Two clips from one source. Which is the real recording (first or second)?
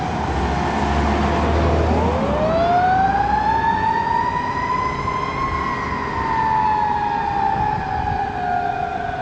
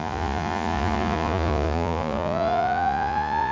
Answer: first